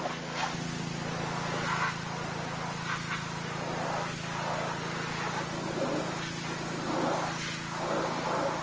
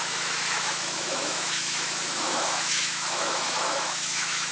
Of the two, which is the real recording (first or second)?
first